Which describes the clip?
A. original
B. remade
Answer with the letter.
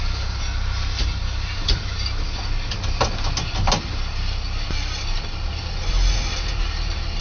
A